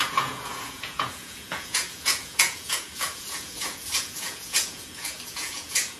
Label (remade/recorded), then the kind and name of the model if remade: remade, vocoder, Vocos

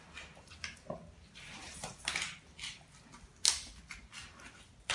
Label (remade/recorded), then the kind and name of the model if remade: recorded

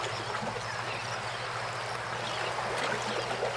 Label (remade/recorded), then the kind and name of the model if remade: recorded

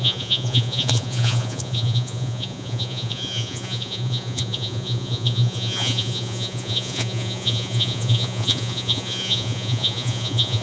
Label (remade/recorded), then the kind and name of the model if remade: remade, vocoder, Vocos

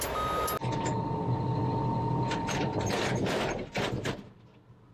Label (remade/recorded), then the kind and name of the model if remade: recorded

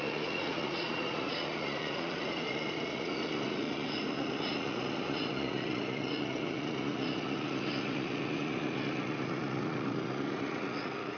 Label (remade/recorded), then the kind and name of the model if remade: remade, vocoder, Vocos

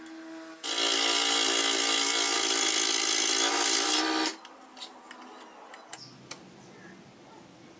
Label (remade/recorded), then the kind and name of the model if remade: recorded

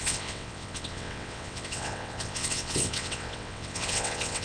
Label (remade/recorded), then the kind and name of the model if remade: remade, vocoder, WaveNeXt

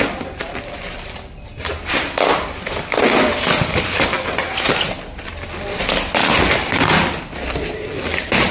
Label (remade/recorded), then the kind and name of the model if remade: recorded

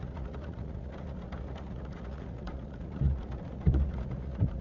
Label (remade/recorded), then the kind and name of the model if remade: remade, vocoder, Vocos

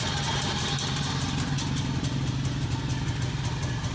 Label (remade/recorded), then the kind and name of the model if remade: recorded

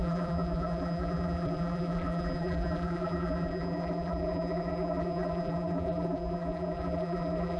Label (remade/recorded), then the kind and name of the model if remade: remade, vocoder, BigVGAN v2